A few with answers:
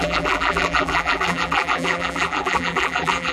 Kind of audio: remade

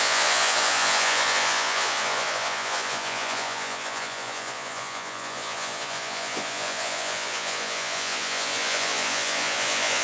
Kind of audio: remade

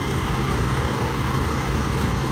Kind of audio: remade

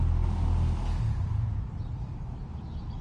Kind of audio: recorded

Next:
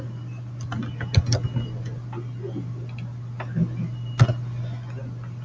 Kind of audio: recorded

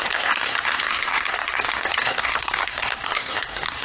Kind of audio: remade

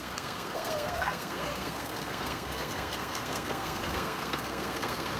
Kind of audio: remade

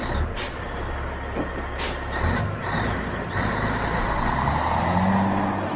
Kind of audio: recorded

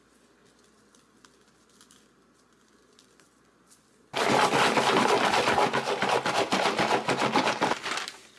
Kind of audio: recorded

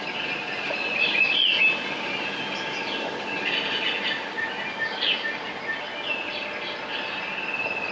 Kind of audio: recorded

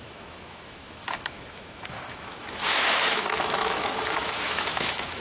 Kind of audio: remade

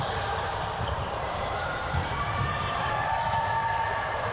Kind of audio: remade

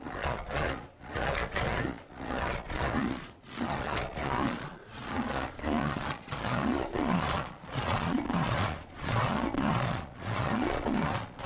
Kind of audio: remade